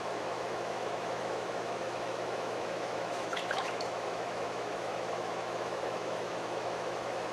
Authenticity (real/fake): fake